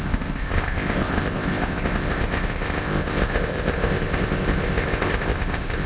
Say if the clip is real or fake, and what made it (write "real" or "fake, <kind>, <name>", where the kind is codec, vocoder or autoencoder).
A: fake, codec, ZipCodec